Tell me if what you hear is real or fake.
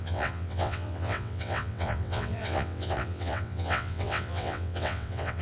fake